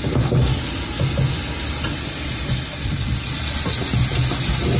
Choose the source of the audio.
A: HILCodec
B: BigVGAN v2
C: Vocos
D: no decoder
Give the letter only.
D